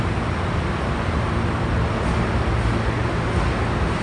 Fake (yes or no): no